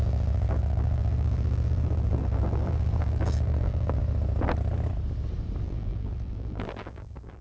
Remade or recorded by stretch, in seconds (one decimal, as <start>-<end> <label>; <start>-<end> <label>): 0.0-4.0 remade; 4.0-5.6 recorded; 5.6-7.4 remade